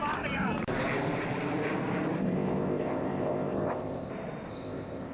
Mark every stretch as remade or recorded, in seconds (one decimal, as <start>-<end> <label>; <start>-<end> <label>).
0.0-2.2 recorded; 2.2-4.1 remade; 4.1-4.5 recorded; 4.5-5.1 remade